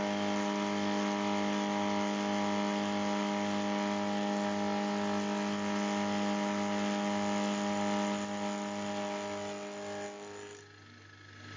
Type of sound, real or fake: real